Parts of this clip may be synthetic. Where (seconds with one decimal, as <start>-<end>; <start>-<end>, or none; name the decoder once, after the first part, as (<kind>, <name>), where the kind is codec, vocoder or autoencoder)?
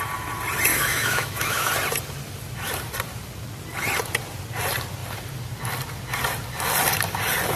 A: 0.7-1.7 (autoencoder, DAC-VAE)